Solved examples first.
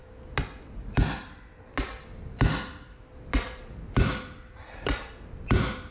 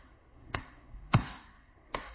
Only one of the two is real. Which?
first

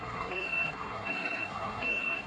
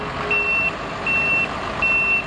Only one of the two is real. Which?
second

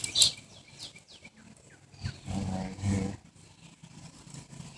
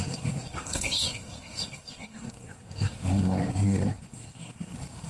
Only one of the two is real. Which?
first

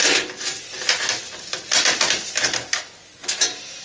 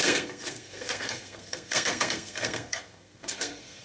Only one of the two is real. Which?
first